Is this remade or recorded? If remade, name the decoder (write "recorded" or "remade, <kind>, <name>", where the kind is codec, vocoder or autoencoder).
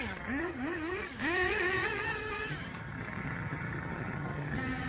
remade, vocoder, HiFi-GAN